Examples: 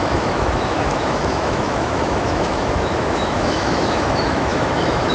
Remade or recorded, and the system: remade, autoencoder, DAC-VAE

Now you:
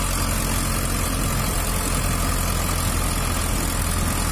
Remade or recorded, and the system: recorded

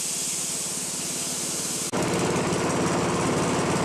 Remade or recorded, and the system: recorded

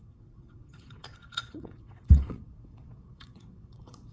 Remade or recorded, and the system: remade, vocoder, WaveNeXt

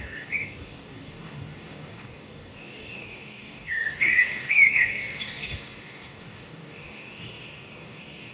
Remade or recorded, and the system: remade, codec, DAC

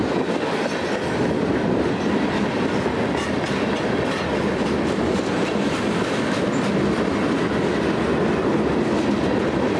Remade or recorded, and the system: recorded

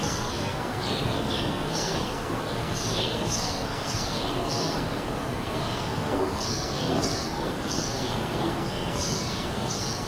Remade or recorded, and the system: remade, codec, SNAC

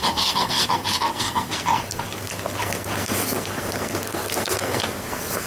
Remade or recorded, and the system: remade, codec, SNAC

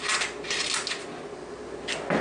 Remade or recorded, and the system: recorded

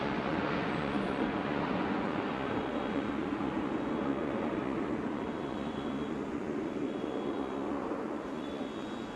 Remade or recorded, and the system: remade, vocoder, Vocos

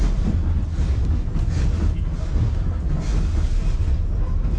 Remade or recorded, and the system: recorded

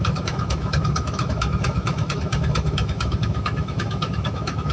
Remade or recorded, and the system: remade, autoencoder, DAC-VAE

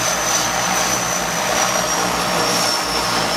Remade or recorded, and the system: recorded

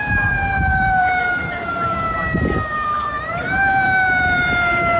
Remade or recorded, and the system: remade, vocoder, BigVGAN v2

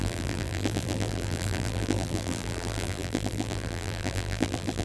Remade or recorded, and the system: remade, vocoder, BigVGAN v2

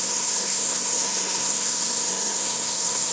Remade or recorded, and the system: remade, codec, SNAC